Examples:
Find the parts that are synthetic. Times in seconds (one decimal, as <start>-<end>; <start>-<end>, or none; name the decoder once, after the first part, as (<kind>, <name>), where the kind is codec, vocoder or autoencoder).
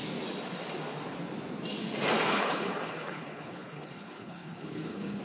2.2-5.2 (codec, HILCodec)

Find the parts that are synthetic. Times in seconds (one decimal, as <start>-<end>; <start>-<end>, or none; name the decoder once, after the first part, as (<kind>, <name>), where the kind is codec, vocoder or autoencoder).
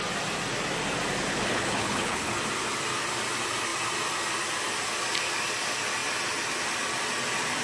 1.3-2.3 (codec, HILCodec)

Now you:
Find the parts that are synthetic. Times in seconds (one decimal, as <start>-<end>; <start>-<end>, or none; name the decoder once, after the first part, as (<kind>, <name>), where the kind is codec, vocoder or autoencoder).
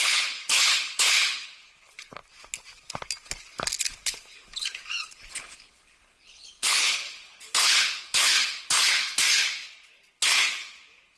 0.0-2.2 (codec, HILCodec); 3.8-11.2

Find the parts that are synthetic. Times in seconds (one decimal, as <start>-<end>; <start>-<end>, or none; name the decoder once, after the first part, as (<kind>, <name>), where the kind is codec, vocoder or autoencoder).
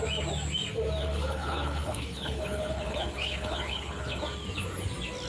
1.0-4.2 (codec, HILCodec)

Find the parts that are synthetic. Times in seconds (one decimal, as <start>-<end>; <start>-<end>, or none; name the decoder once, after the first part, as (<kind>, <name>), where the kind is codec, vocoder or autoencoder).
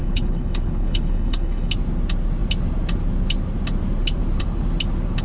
0.0-1.7 (codec, HILCodec)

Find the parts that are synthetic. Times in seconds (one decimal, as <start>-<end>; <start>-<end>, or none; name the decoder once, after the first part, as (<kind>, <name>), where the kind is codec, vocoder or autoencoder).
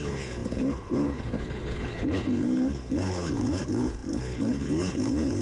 0.0-5.4 (codec, HILCodec)